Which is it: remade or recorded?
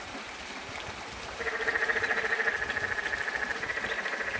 recorded